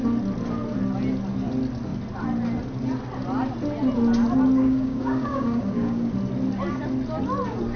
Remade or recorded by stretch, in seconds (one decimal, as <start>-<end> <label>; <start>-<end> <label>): 0.0-4.6 recorded; 4.6-6.1 remade; 6.1-7.8 recorded